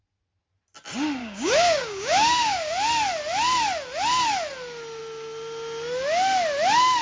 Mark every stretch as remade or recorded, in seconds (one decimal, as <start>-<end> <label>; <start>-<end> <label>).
0.0-1.2 recorded; 1.2-2.7 remade; 2.7-7.0 recorded